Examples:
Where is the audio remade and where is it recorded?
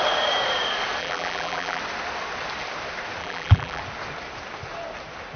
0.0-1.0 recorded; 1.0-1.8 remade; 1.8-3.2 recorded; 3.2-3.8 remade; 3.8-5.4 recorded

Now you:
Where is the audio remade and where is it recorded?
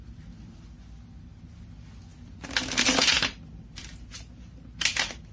0.0-5.3 recorded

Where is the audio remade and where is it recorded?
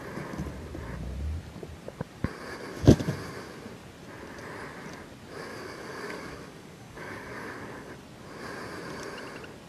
0.0-5.5 recorded; 5.5-7.9 remade; 7.9-9.7 recorded